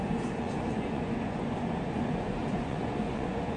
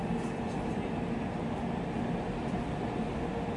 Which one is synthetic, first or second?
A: first